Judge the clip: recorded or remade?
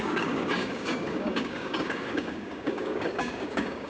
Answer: remade